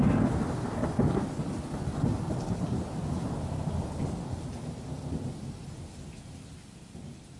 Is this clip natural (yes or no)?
yes